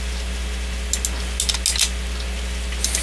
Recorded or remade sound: recorded